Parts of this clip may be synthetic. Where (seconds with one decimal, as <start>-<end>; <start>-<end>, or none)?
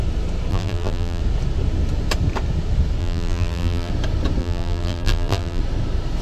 0.5-1.2; 3.0-3.9; 4.4-5.6